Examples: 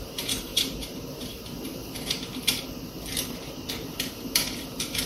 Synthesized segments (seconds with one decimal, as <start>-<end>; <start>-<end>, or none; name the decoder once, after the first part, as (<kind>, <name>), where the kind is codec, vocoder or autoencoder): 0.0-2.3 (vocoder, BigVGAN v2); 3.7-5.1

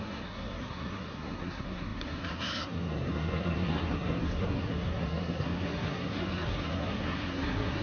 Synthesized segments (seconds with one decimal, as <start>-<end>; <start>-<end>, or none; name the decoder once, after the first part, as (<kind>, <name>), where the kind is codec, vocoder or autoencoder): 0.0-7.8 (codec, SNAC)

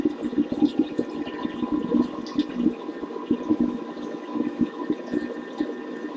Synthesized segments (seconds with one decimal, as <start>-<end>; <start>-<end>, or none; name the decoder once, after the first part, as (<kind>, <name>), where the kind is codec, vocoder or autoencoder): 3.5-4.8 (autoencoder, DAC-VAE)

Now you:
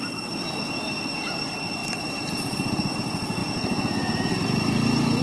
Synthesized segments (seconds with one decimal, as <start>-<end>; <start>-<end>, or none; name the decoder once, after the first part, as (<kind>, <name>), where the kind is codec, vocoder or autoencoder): 3.4-4.3 (vocoder, Vocos)

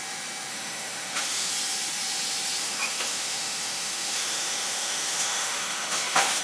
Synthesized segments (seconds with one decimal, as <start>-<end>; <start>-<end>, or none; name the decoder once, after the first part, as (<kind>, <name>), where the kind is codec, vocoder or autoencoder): 0.5-1.5 (autoencoder, DAC-VAE); 2.6-6.4

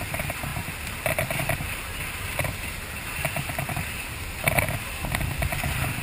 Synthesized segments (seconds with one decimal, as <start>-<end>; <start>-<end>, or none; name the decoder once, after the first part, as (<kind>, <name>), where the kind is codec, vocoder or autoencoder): none

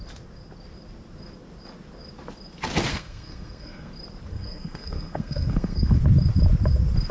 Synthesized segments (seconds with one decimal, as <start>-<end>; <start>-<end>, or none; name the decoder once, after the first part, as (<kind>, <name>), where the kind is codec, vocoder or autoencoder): 2.9-3.9 (codec, SNAC); 4.3-6.0